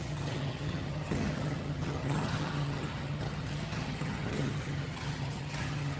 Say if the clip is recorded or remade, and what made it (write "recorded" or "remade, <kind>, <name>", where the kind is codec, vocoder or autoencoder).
remade, vocoder, HiFi-GAN